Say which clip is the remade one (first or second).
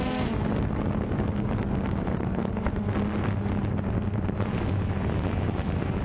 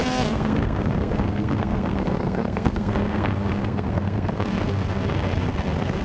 second